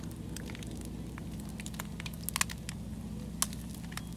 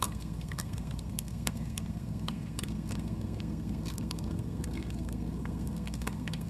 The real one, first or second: first